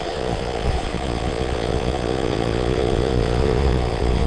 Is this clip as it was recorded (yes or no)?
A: no